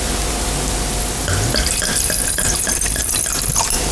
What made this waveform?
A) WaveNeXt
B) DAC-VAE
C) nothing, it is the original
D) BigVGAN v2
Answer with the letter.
C